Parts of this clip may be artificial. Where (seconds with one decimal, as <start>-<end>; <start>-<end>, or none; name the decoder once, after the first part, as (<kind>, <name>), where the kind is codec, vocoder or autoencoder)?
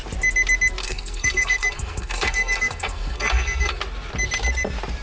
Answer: 0.8-3.8 (codec, SNAC)